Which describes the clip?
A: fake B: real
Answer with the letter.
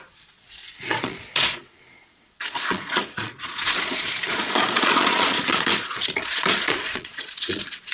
A